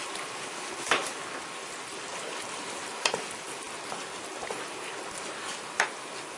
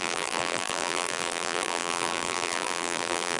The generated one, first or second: second